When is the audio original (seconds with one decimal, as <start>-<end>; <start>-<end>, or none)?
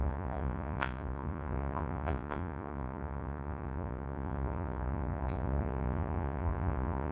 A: none